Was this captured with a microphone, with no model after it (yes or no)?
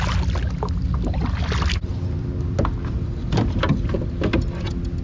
yes